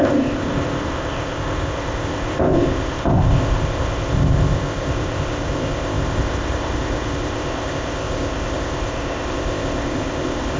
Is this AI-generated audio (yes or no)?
yes